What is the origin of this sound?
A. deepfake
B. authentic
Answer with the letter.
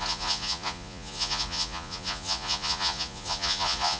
A